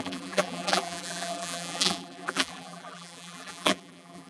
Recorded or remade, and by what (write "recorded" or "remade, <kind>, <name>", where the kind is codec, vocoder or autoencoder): remade, vocoder, BigVGAN v2